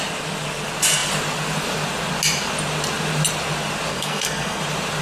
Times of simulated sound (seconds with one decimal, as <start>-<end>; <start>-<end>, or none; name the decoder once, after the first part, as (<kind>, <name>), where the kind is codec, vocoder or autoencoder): 3.9-4.6 (codec, SNAC)

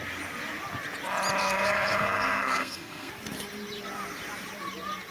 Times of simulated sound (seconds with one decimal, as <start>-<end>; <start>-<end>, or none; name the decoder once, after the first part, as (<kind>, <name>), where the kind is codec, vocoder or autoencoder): 1.4-3.1 (codec, SNAC)

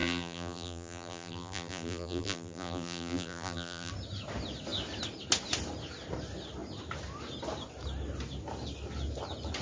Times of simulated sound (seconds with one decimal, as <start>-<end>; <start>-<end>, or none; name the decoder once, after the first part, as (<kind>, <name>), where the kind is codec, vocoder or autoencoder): 0.0-3.9 (vocoder, BigVGAN v2)